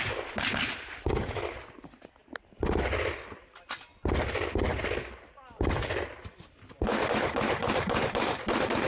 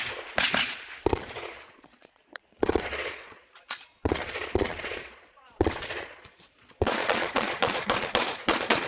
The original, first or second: first